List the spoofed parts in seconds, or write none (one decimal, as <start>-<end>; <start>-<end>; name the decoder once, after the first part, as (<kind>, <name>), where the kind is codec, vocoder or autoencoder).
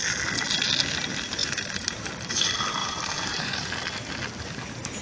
1.4-2.1 (vocoder, BigVGAN v2); 2.8-3.7